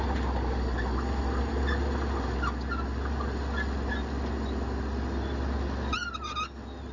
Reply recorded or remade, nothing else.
recorded